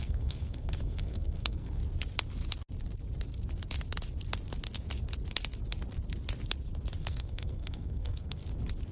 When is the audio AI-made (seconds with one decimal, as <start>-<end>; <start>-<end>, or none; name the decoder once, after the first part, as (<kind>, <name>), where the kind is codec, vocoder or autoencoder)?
0.0-1.8 (codec, SNAC); 7.0-8.4